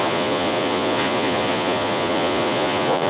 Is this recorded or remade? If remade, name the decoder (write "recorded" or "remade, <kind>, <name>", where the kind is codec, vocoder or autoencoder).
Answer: remade, vocoder, Vocos